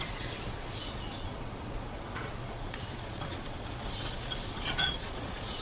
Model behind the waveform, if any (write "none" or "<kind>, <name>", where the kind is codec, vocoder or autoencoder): vocoder, Vocos